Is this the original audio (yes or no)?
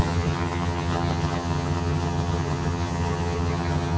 no